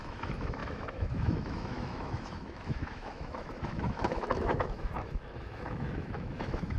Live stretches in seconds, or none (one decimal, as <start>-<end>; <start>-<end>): none